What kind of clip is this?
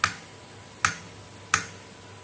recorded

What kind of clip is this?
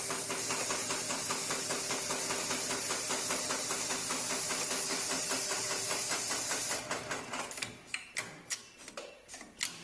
recorded